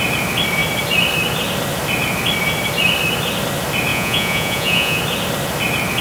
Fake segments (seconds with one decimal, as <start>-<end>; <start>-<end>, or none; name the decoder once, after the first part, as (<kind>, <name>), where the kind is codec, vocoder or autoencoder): 3.9-5.0 (vocoder, Vocos)